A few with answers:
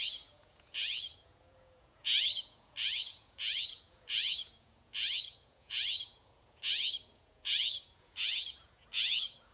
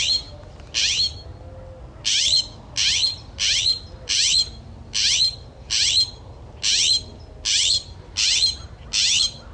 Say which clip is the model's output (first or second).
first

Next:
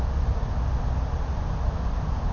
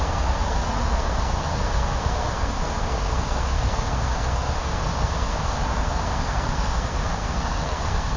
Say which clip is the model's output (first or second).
second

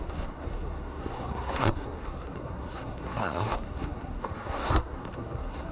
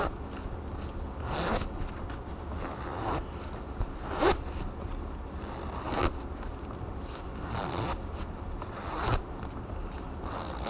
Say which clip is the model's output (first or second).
first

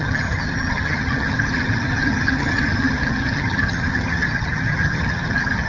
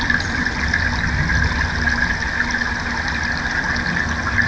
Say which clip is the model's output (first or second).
first